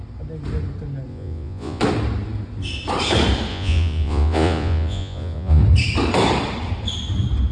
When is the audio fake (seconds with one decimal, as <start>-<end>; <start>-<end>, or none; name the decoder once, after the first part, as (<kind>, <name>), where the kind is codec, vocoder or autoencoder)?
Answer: 1.1-1.8 (vocoder, Vocos); 3.5-5.6